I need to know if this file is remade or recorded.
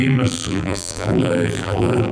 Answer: remade